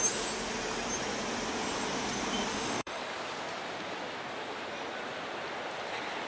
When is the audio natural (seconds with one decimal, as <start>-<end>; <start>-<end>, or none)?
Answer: 0.0-2.5; 3.0-6.3